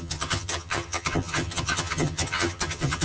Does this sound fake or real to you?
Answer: fake